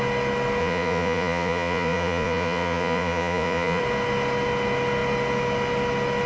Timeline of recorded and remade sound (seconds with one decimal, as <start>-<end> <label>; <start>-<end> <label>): 0.0-0.6 recorded; 0.6-3.8 remade; 3.8-6.3 recorded